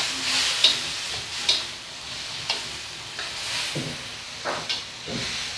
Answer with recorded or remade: recorded